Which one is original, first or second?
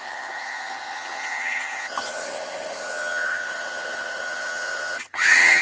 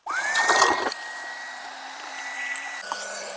second